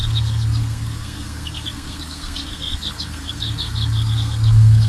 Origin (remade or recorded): remade